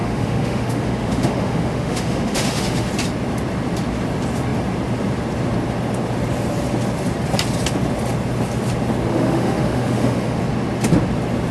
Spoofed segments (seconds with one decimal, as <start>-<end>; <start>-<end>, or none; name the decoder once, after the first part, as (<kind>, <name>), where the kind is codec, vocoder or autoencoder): 0.0-2.9 (autoencoder, DAC-VAE); 9.1-10.4